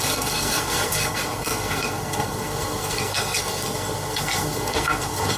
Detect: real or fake fake